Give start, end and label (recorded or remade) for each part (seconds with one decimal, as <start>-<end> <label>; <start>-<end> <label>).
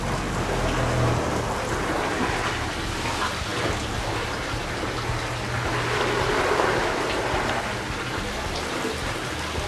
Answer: 0.0-9.7 recorded